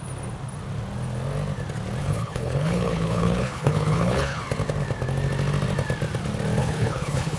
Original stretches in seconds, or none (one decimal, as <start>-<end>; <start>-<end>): 0.0-2.0; 4.4-6.6